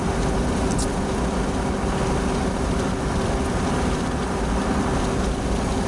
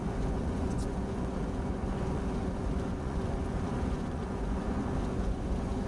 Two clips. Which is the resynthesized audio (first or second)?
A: second